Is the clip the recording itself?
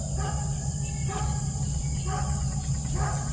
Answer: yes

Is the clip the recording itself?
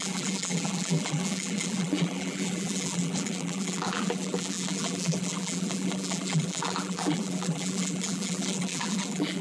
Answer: no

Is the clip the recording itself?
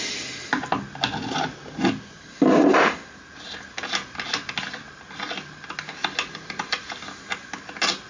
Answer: yes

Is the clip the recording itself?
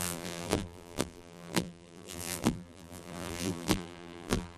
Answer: no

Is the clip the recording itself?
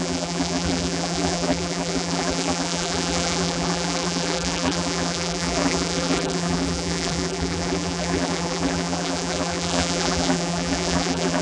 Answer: no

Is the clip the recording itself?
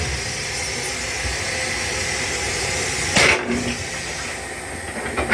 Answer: yes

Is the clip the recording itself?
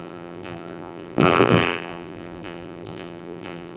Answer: no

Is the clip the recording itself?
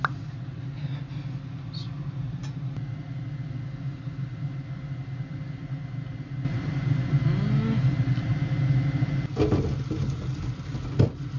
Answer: yes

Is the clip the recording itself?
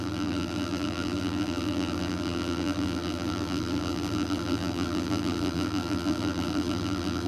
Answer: no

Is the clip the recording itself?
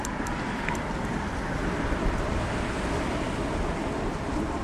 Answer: no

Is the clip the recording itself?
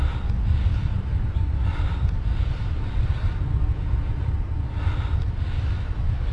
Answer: yes